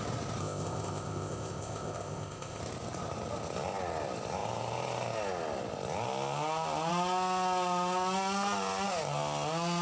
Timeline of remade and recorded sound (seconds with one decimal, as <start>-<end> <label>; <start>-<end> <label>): 0.0-0.4 recorded; 0.4-2.6 remade; 2.6-9.8 recorded